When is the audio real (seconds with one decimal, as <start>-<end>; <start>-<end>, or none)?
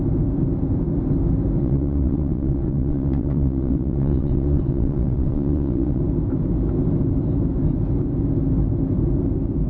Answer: 0.0-1.6; 6.0-9.7